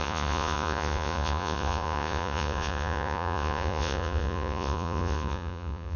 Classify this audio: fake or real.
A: fake